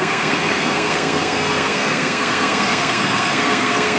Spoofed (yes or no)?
yes